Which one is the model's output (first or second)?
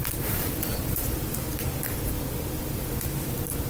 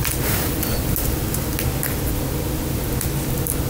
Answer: first